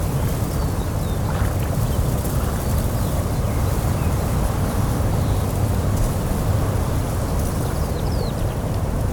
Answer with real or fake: real